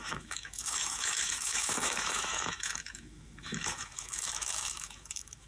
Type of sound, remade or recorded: remade